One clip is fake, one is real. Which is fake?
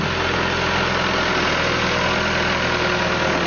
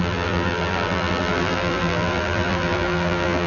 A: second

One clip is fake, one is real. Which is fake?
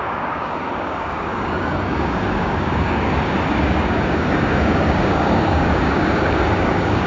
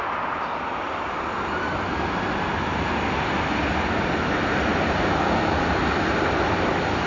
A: first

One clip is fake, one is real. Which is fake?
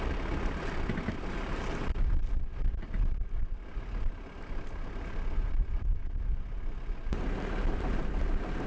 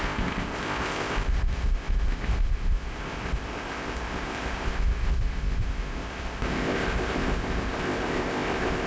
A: second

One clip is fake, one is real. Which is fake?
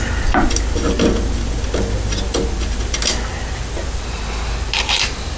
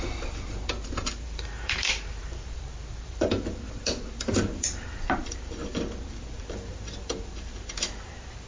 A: second